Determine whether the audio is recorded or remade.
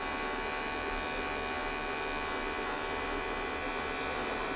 recorded